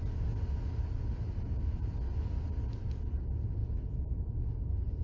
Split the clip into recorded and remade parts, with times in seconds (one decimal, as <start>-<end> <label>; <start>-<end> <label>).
0.0-5.0 recorded